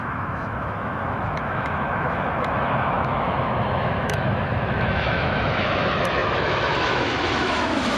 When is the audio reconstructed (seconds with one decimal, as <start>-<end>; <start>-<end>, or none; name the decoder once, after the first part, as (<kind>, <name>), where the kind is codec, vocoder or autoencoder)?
0.0-8.0 (autoencoder, DAC-VAE)